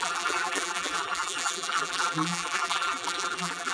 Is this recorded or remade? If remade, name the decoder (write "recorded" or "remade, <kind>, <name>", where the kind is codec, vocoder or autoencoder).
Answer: remade, vocoder, BigVGAN v2